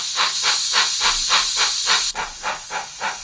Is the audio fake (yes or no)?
no